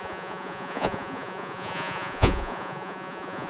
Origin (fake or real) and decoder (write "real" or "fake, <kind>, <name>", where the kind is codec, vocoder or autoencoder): fake, vocoder, Vocos